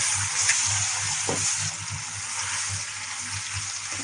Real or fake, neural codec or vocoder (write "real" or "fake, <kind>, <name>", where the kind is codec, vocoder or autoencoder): real